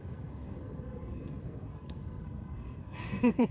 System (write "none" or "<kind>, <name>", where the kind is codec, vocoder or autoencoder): codec, SNAC